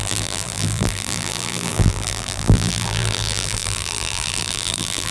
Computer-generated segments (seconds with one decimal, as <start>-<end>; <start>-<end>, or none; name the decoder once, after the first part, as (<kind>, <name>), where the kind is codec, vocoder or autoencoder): 0.0-5.1 (vocoder, BigVGAN v2)